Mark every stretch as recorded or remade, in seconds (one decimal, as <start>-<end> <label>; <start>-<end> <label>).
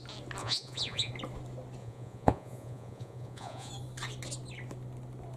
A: 0.0-0.4 recorded; 0.4-1.1 remade; 1.1-1.8 recorded; 1.8-3.7 remade; 3.7-5.4 recorded